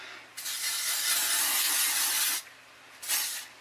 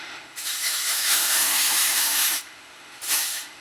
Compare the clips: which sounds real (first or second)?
first